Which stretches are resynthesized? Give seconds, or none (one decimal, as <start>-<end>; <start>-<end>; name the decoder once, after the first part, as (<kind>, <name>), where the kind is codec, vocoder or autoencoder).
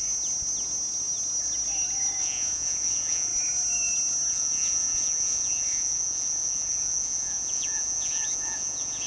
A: 2.2-3.3 (vocoder, Vocos); 4.3-9.1